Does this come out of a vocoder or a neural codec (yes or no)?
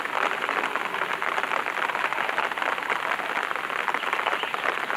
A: no